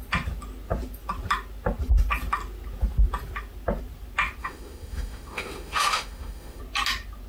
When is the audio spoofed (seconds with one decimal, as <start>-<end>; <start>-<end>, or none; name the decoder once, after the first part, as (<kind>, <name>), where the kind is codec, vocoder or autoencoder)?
4.4-6.6 (autoencoder, DAC-VAE)